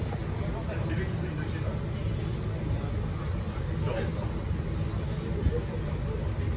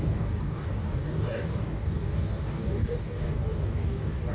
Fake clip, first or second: second